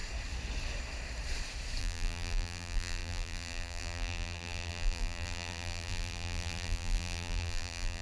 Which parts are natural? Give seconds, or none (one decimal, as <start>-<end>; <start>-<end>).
0.0-1.8